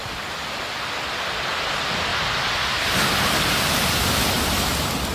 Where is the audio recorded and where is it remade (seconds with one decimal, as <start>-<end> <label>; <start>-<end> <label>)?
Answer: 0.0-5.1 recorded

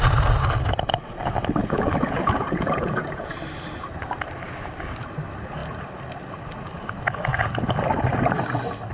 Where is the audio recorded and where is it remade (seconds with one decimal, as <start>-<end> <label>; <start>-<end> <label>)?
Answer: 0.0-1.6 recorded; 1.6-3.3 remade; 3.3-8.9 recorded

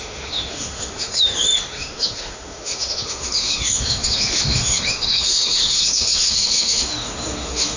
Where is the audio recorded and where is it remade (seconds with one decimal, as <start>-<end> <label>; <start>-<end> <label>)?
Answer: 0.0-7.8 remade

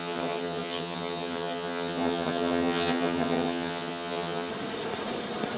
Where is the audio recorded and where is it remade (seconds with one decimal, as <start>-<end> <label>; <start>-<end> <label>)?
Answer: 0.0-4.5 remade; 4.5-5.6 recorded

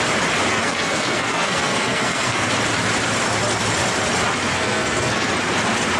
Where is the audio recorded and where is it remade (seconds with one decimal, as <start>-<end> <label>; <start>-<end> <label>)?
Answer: 0.0-0.5 recorded; 0.5-2.5 remade; 2.5-4.5 recorded; 4.5-5.3 remade; 5.3-6.0 recorded